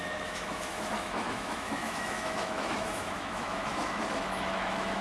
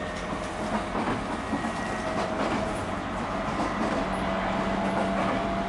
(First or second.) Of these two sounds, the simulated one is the first